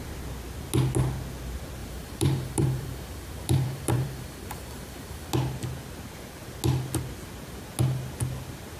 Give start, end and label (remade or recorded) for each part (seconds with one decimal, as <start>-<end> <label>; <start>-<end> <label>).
0.0-1.8 recorded; 1.8-5.3 remade; 5.3-8.8 recorded